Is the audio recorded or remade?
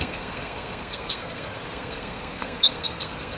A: remade